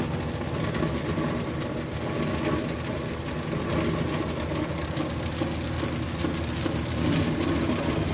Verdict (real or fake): real